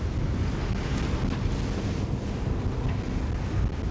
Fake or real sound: real